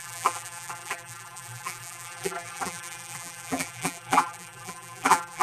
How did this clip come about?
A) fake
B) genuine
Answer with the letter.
A